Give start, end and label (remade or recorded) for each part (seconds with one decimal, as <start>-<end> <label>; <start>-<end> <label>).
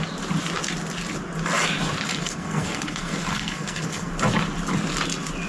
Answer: 0.0-2.1 recorded; 2.1-4.1 remade; 4.1-5.5 recorded